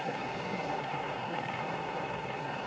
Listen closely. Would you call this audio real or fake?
fake